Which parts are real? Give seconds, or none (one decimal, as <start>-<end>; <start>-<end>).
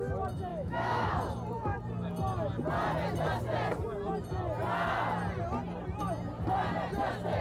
0.0-0.5; 1.1-7.4